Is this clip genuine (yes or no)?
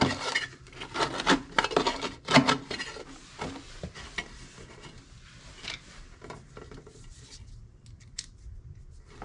yes